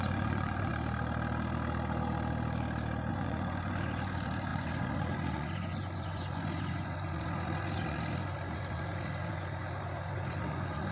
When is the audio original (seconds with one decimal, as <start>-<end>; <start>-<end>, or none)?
0.7-3.1